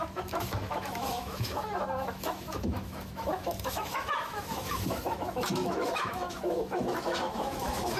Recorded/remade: remade